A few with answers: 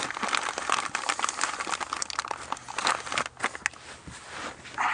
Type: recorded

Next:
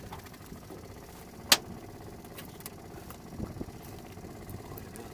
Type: recorded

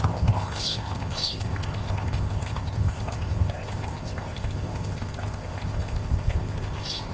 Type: remade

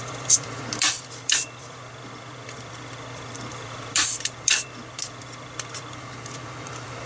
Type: remade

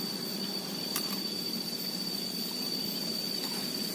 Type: recorded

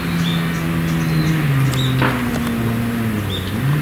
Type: recorded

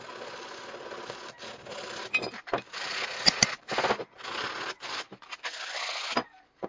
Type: recorded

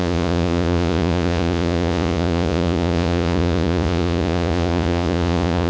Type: remade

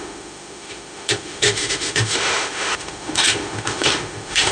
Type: remade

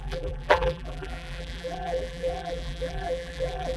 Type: remade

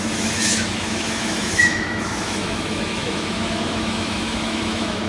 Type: remade